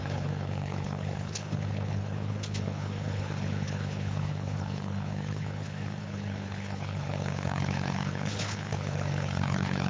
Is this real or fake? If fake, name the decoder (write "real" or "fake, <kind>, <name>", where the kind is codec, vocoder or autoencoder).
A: fake, codec, HILCodec